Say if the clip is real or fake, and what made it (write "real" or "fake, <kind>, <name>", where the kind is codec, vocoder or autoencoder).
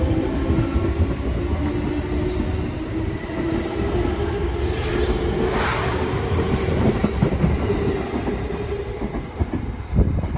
real